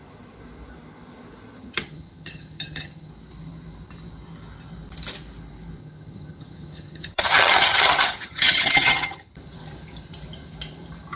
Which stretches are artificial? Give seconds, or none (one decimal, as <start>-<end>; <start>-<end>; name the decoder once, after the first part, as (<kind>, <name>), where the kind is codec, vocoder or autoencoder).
1.6-3.1 (vocoder, HiFi-GAN); 5.8-9.3